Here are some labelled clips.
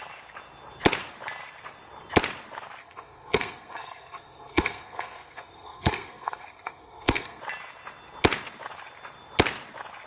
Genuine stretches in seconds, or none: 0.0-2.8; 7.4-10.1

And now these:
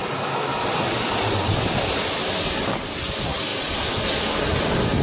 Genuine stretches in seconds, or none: 0.0-5.0

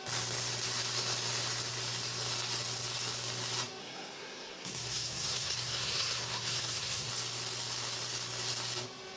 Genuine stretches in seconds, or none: 0.0-3.8; 7.1-9.2

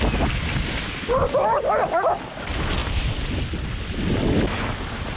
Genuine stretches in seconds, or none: 0.0-5.2

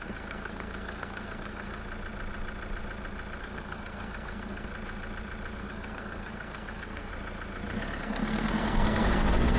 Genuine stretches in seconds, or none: 1.8-3.4; 4.7-5.6; 7.1-8.0

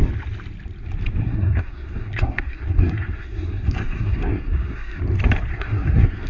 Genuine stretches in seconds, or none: 0.0-1.2; 5.0-5.5

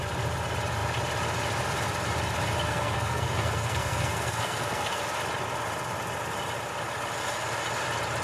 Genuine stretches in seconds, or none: 0.0-2.6; 5.0-8.2